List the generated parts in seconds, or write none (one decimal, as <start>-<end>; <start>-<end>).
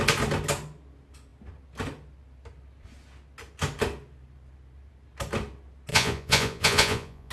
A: 5.9-7.3